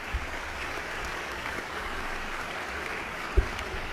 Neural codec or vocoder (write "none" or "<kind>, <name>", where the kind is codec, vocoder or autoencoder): codec, DAC